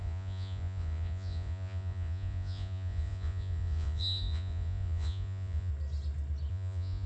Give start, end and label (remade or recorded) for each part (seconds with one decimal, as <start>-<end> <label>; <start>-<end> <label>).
0.0-5.7 remade; 5.7-6.5 recorded; 6.5-7.1 remade